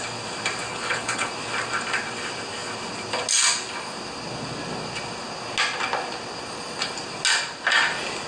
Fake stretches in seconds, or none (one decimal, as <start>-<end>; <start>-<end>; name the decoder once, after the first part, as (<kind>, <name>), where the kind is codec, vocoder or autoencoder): 0.7-1.3 (codec, HILCodec)